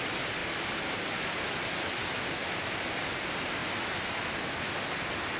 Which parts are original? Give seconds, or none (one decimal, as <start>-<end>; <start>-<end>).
0.0-0.4; 1.3-2.4; 3.2-5.4